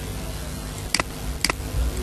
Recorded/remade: recorded